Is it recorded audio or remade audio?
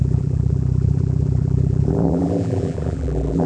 remade